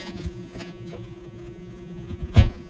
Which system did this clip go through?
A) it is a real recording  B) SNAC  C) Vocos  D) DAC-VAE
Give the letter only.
C